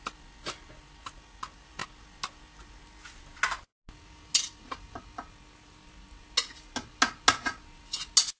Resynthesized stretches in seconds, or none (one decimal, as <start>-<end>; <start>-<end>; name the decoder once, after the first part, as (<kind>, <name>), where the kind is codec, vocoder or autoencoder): none